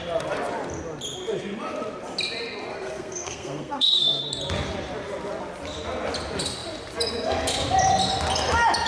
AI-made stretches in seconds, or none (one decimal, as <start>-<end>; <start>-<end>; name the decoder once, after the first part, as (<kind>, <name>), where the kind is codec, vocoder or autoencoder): 2.7-4.2 (codec, SNAC)